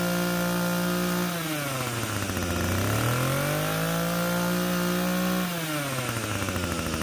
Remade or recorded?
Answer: recorded